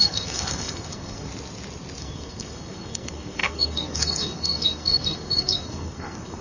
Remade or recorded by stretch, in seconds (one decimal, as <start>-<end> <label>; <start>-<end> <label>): 0.0-1.3 remade; 1.3-2.0 recorded; 2.0-6.4 remade